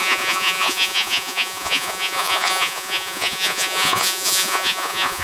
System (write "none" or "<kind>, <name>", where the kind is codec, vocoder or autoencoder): vocoder, Vocos